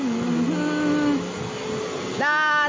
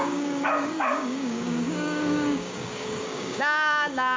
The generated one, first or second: second